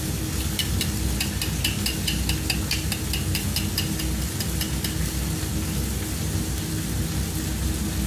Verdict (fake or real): real